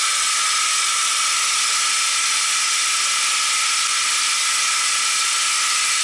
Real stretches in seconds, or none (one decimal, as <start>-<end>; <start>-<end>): 0.0-6.0